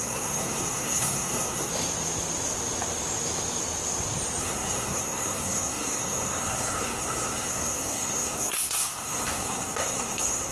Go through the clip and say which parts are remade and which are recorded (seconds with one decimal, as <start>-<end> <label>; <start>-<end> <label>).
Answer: 0.0-1.7 remade; 1.7-4.4 recorded; 4.4-10.5 remade